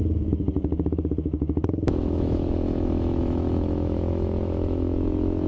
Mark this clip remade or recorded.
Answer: remade